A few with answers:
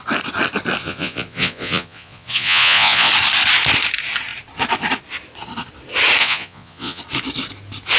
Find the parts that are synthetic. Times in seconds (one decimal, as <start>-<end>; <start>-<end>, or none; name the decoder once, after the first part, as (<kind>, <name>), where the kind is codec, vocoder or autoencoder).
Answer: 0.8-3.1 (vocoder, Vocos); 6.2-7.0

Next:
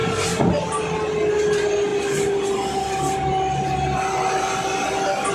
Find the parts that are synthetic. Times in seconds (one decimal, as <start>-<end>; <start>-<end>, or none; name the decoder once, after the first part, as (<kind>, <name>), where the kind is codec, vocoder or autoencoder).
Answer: none

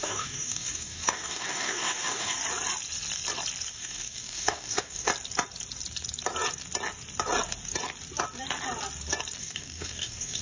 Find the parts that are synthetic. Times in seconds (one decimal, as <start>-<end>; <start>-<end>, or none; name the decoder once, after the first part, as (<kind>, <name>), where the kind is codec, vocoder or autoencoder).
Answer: 0.0-2.4 (codec, DAC); 3.7-5.1; 9.4-10.4

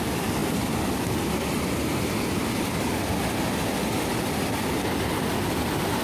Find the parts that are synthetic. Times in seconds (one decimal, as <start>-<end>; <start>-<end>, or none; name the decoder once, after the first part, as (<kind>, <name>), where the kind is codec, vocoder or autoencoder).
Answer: none